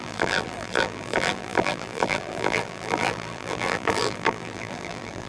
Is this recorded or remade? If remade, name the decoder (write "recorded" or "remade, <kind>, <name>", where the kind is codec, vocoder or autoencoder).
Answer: remade, vocoder, BigVGAN v2